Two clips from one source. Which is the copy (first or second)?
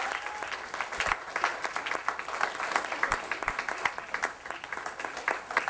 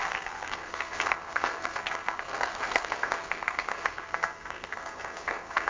second